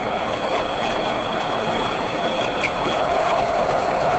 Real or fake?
fake